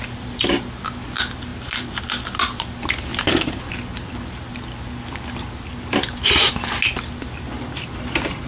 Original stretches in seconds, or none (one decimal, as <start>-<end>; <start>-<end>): 0.0-1.5; 2.0-3.1; 3.6-8.5